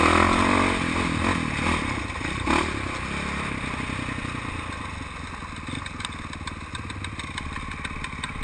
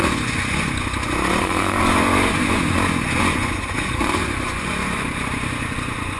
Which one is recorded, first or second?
first